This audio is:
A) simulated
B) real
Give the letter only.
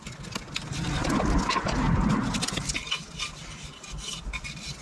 B